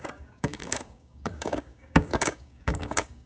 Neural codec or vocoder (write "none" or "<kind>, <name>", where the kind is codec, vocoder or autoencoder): codec, DAC